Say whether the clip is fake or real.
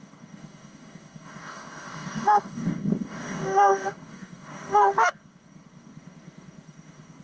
fake